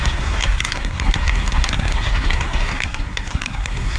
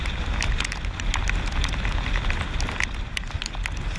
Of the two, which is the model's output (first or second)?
first